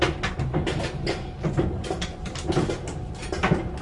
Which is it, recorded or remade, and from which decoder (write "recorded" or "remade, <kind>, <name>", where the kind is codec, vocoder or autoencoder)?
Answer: recorded